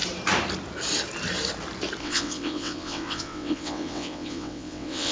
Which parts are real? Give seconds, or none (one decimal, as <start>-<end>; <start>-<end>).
0.0-2.0